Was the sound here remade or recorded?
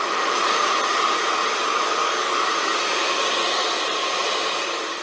recorded